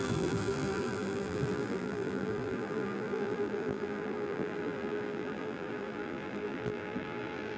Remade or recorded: remade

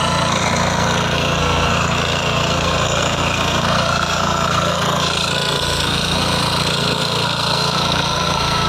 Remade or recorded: remade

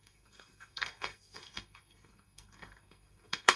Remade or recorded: remade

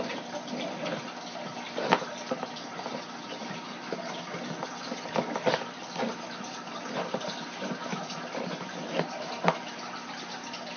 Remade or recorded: recorded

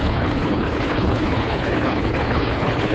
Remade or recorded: remade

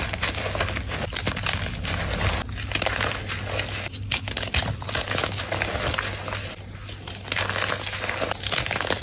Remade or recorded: recorded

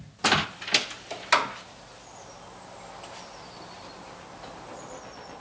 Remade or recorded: recorded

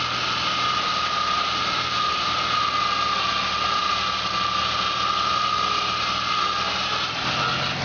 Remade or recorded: recorded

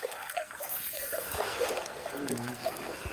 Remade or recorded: remade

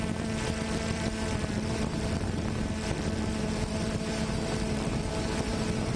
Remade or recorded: recorded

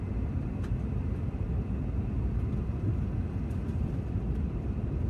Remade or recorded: remade